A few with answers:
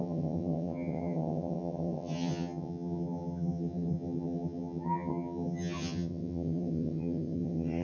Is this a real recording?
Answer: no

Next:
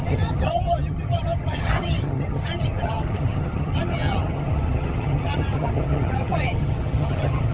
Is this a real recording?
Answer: no